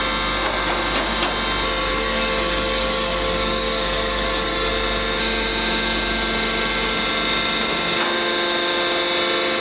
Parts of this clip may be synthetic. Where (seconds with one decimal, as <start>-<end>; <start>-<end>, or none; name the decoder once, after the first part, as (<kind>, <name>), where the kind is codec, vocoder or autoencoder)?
1.9-4.7 (codec, DAC)